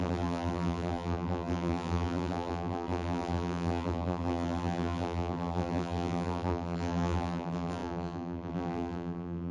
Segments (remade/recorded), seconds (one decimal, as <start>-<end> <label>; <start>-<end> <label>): 0.0-9.5 remade